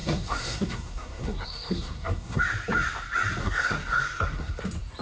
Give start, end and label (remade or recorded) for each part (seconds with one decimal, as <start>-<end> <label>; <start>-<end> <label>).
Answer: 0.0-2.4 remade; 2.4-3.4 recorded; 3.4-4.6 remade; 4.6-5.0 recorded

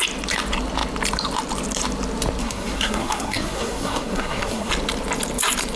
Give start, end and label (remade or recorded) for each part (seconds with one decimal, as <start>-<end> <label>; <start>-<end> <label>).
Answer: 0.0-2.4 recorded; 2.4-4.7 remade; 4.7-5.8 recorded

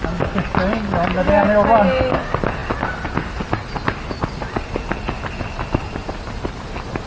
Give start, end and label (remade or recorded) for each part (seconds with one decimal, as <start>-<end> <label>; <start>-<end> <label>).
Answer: 0.0-7.1 recorded

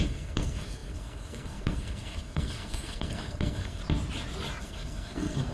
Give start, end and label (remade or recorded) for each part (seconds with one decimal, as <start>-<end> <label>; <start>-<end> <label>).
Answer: 0.0-3.8 remade; 3.8-4.6 recorded; 4.6-5.5 remade